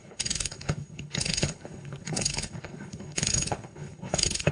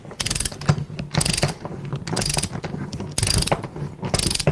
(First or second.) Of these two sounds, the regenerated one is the first